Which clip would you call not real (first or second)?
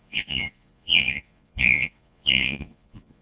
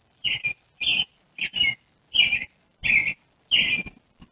first